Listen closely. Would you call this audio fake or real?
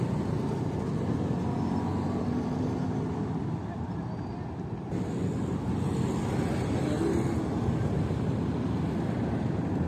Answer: real